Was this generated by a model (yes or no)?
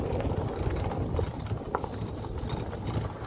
no